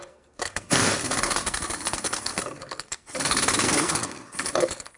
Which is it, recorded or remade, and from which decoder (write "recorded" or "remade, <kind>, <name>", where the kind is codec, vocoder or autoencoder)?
remade, codec, SNAC